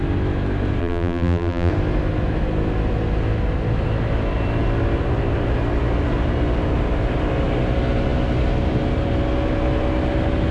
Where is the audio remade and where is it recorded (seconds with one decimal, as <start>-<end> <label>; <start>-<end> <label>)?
0.0-0.8 recorded; 0.8-1.7 remade; 1.7-10.5 recorded